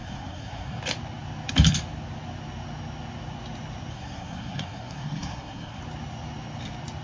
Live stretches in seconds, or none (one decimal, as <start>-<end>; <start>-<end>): 0.8-3.9; 5.8-7.0